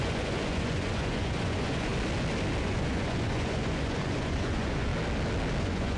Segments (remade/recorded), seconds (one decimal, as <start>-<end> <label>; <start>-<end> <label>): 0.0-1.9 remade; 1.9-2.6 recorded; 2.6-4.9 remade; 4.9-5.6 recorded; 5.6-6.0 remade